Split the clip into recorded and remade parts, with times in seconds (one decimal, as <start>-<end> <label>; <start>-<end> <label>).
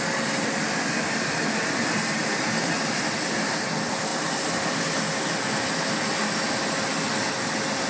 0.0-7.9 recorded